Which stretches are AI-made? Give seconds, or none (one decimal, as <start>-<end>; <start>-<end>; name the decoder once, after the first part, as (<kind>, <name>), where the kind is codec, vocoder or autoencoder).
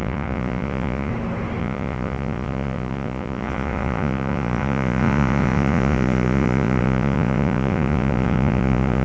0.0-1.1 (vocoder, Vocos); 1.6-9.0